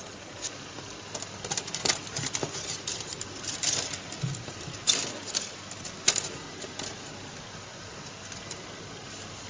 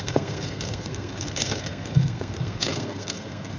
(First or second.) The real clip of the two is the first